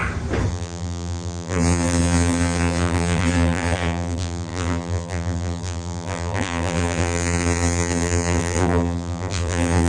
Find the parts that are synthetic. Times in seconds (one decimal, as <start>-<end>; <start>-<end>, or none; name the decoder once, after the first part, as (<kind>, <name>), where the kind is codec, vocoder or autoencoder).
0.5-9.9 (vocoder, BigVGAN v2)